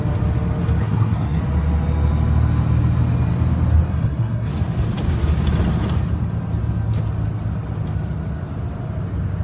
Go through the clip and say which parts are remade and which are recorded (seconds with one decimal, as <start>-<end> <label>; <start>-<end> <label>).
0.0-0.8 recorded; 0.8-1.4 remade; 1.4-3.9 recorded; 3.9-4.5 remade; 4.5-9.4 recorded